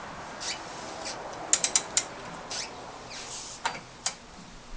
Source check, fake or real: real